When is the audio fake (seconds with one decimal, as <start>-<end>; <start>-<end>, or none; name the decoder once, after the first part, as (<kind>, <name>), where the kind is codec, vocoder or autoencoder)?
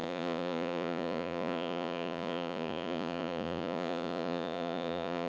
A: 0.0-5.3 (vocoder, Vocos)